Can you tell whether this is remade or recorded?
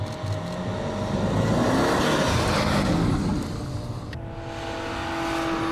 recorded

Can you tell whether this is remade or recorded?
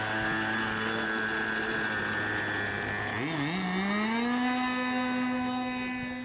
recorded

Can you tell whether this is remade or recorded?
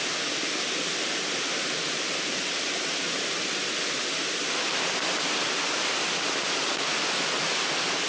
recorded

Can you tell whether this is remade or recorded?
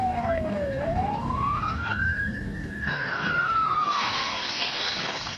remade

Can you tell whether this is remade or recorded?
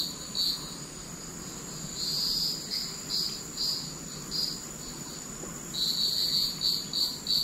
recorded